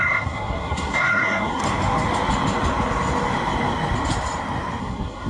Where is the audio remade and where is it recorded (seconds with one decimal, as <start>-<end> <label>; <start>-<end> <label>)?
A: 0.0-1.6 remade; 1.6-4.8 recorded; 4.8-5.3 remade